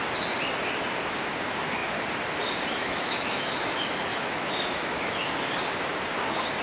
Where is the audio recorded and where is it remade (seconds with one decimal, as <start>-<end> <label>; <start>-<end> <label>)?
0.0-2.8 recorded; 2.8-5.3 remade; 5.3-6.6 recorded